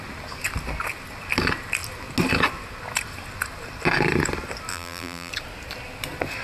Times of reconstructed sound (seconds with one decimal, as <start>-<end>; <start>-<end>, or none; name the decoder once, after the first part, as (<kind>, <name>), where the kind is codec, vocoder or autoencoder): 4.7-5.3 (vocoder, BigVGAN v2)